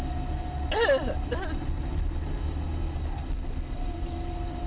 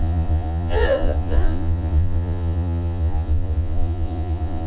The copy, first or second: second